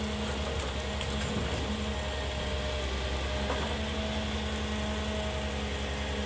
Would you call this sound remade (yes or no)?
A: no